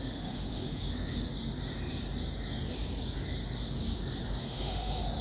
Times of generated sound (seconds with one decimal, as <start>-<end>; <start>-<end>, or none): 0.0-1.3; 4.4-5.2